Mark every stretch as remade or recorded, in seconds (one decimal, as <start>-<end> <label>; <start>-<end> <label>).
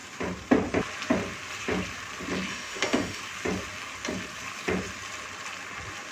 0.0-2.5 recorded; 2.5-3.2 remade; 3.2-6.1 recorded